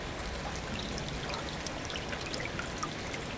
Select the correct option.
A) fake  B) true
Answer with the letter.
B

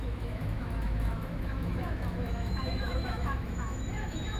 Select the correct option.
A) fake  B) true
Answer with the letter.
A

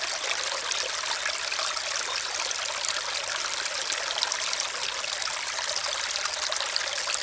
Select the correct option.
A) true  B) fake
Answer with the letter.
A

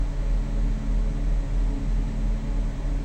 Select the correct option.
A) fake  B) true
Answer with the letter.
B